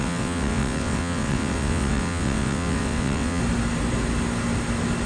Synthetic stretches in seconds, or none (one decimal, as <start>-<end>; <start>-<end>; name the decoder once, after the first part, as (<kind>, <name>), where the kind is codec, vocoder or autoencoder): 0.0-3.4 (vocoder, WaveNeXt)